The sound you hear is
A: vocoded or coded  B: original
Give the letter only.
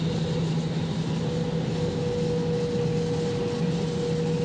B